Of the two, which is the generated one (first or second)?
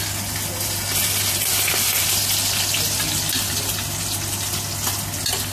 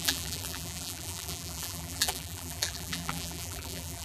second